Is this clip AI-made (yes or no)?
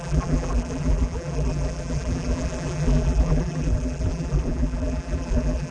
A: yes